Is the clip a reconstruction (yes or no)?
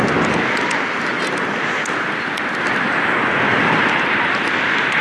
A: no